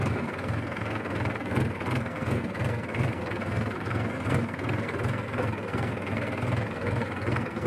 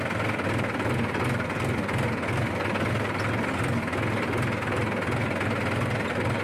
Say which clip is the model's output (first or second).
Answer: first